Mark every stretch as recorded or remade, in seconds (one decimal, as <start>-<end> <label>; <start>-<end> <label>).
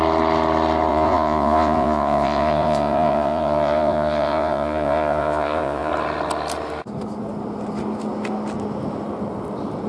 0.0-0.9 recorded; 0.9-5.9 remade; 5.9-9.9 recorded